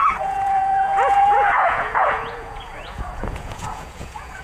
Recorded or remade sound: remade